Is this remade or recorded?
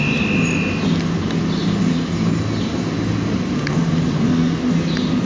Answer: recorded